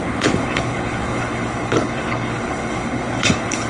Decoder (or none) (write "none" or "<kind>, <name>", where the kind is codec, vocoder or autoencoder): codec, HILCodec